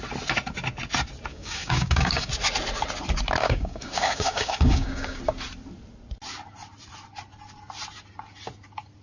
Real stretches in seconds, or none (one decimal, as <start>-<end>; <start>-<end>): 0.0-1.3; 2.3-3.4; 5.2-9.0